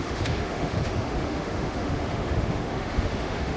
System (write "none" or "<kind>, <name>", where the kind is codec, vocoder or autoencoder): autoencoder, DAC-VAE